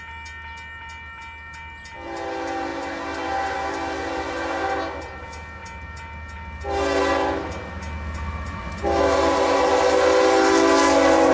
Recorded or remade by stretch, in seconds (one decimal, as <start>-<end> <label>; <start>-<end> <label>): 0.0-11.3 recorded